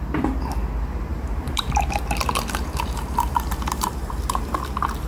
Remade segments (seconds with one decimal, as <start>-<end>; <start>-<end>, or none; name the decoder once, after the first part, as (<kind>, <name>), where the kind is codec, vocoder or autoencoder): 1.1-4.2 (vocoder, BigVGAN v2)